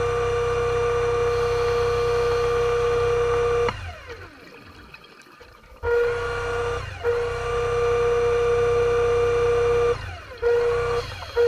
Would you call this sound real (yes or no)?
yes